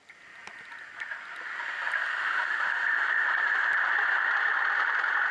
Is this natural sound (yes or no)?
yes